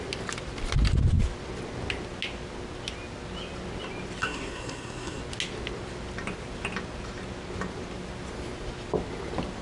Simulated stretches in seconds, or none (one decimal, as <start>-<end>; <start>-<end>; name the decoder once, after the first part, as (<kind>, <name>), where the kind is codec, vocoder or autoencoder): 4.2-5.2 (codec, SNAC)